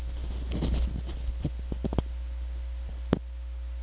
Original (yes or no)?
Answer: yes